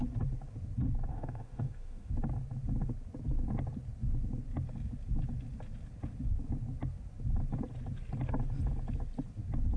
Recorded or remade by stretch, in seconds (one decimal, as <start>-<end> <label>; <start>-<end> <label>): 0.0-1.1 recorded; 1.1-2.1 remade; 2.1-9.8 recorded